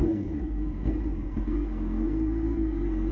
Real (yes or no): no